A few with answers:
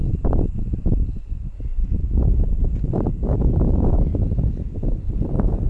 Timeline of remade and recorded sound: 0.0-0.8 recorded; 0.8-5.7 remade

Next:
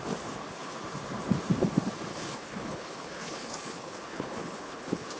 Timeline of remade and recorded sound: 0.0-2.1 recorded; 2.1-5.2 remade

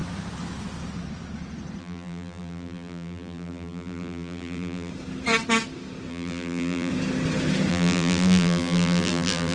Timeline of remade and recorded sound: 0.0-1.8 recorded; 1.8-4.9 remade; 4.9-6.1 recorded; 6.1-6.9 remade; 6.9-7.7 recorded; 7.7-9.5 remade

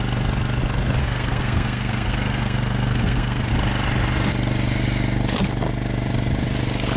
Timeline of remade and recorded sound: 0.0-1.0 recorded; 1.0-3.5 remade; 3.5-7.0 recorded

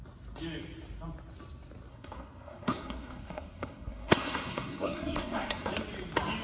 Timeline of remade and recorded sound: 0.0-1.9 recorded; 1.9-5.7 remade; 5.7-6.4 recorded

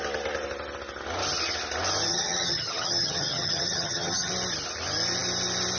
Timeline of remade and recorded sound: 0.0-2.1 recorded; 2.1-4.3 remade; 4.3-5.8 recorded

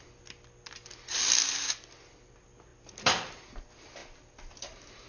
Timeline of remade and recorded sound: 0.0-5.1 recorded

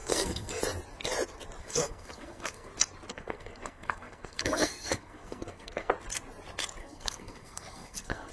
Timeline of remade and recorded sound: 0.0-0.6 remade; 0.6-1.6 recorded; 1.6-2.7 remade; 2.7-3.1 recorded; 3.1-5.9 remade; 5.9-6.8 recorded; 6.8-8.3 remade